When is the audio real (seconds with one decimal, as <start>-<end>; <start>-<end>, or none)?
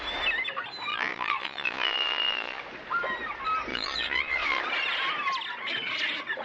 0.0-0.9; 2.6-3.7; 4.6-6.4